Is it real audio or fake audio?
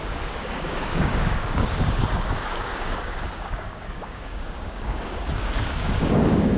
fake